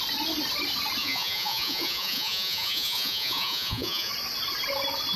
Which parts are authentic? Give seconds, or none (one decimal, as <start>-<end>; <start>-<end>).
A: 0.0-1.0; 4.1-5.2